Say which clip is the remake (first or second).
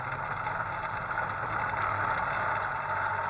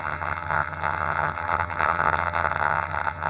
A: second